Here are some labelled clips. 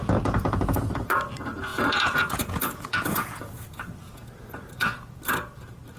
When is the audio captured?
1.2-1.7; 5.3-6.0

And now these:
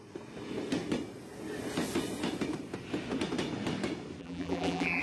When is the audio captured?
0.0-4.2

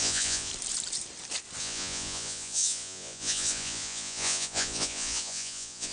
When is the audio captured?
0.5-1.6